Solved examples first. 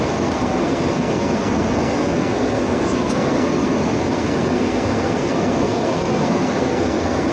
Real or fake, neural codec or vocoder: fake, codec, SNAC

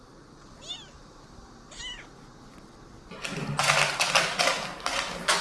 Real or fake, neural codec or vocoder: real